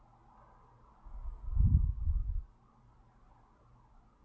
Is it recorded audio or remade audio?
recorded